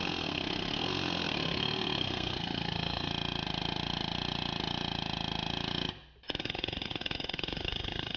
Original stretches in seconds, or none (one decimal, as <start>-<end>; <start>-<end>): 3.1-6.4